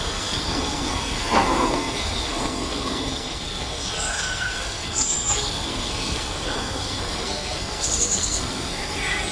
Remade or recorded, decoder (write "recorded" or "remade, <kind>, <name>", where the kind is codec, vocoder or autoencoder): remade, codec, SNAC